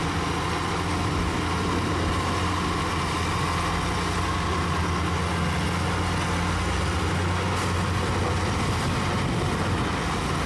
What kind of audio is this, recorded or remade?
recorded